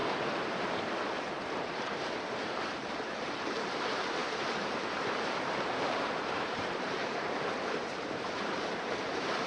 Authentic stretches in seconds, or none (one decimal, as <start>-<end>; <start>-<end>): 4.2-4.8; 7.0-7.8